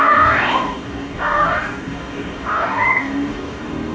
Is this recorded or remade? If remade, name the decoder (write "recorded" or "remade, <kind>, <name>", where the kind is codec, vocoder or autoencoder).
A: remade, codec, DAC